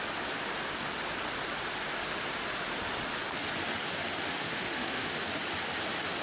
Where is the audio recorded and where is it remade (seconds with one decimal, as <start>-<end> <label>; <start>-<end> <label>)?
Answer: 0.0-4.3 recorded; 4.3-5.1 remade; 5.1-6.2 recorded